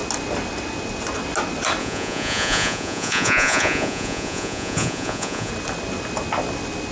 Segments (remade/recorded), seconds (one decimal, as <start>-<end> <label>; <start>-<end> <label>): 0.0-1.8 recorded; 1.8-5.5 remade; 5.5-6.9 recorded